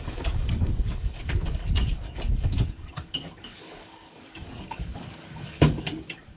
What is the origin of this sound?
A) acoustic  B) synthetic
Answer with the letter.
B